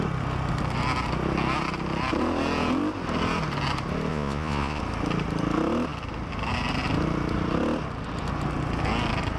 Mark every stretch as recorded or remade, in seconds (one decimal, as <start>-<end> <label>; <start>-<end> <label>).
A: 0.0-4.1 recorded; 4.1-4.8 remade; 4.8-9.4 recorded